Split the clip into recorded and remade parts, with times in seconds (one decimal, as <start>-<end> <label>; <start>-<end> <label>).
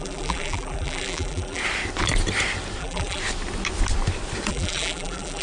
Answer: 0.0-1.6 remade; 1.6-2.8 recorded; 2.8-3.2 remade; 3.2-4.5 recorded; 4.5-5.4 remade